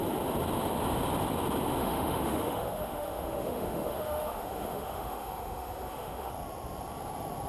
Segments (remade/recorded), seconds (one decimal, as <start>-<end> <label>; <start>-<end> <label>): 0.0-1.8 recorded; 1.8-6.3 remade; 6.3-7.5 recorded